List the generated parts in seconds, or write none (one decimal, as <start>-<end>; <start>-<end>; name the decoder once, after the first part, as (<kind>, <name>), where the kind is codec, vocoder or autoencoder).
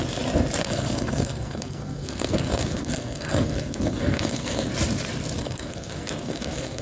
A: 0.6-4.7 (codec, SNAC); 5.4-6.8